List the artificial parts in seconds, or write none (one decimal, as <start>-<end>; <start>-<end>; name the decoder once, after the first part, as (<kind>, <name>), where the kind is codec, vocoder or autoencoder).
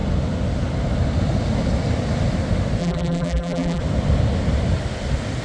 2.8-3.8 (vocoder, BigVGAN v2)